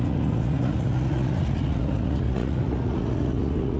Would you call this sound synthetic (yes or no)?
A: yes